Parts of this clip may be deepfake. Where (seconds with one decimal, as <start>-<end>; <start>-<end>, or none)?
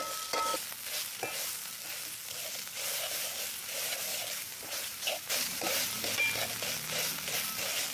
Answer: 4.1-6.0